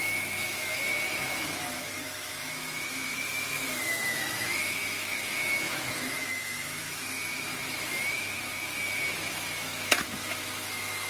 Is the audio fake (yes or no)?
yes